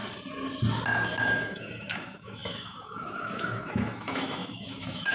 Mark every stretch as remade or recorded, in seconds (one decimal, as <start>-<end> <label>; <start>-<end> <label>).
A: 0.0-1.2 recorded; 1.2-5.1 remade